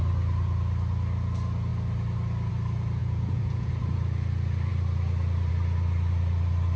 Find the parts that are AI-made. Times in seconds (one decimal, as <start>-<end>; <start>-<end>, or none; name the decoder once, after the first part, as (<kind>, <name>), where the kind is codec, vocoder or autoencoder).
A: 3.0-3.7 (vocoder, Vocos)